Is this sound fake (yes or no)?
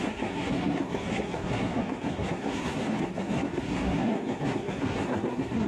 yes